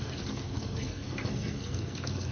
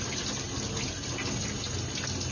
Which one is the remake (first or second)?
first